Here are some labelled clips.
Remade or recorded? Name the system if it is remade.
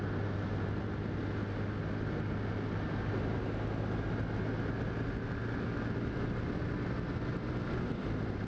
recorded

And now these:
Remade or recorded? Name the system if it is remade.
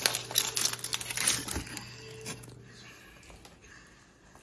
recorded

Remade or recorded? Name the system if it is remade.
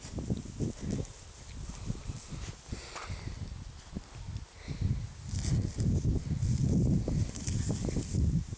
recorded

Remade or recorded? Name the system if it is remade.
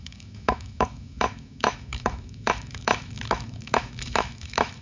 remade, autoencoder, DAC-VAE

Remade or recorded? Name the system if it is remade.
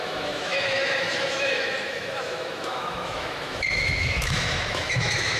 remade, autoencoder, DAC-VAE